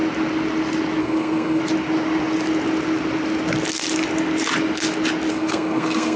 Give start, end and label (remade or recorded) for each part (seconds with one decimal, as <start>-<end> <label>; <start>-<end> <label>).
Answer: 0.0-1.0 recorded; 1.0-1.6 remade; 1.6-5.3 recorded; 5.3-6.2 remade